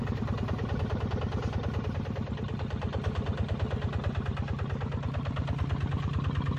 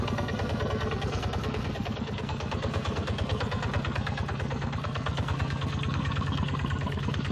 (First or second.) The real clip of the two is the first